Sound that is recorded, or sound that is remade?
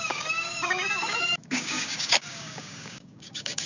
remade